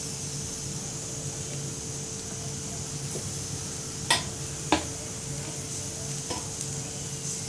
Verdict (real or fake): real